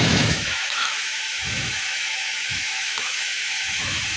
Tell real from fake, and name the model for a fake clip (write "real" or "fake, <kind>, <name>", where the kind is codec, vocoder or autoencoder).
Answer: fake, autoencoder, DAC-VAE